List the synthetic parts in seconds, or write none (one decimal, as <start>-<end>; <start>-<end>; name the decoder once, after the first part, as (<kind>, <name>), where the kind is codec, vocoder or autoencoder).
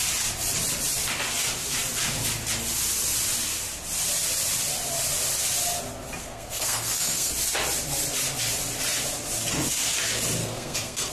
6.2-7.3 (codec, SNAC); 10.4-11.1